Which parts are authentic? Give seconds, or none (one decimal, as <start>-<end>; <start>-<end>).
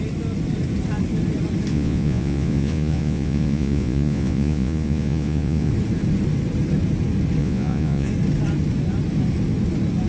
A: 0.0-1.7; 5.7-7.4; 8.1-10.1